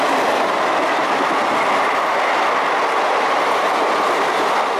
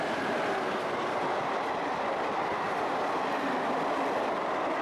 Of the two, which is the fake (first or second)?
second